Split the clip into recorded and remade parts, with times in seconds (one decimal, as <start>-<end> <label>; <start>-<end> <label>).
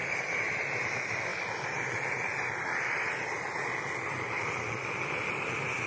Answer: 0.0-0.5 remade; 0.5-5.9 recorded